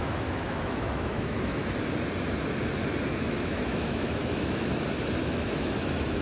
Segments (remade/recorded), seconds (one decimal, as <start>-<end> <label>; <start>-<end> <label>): 0.0-1.6 remade; 1.6-3.2 recorded; 3.2-4.7 remade; 4.7-5.2 recorded; 5.2-6.2 remade